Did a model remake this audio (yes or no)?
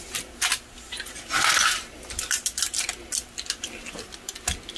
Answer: no